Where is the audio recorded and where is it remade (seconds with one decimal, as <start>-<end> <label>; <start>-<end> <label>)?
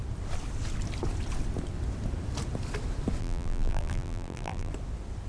0.0-3.2 recorded; 3.2-4.7 remade; 4.7-5.3 recorded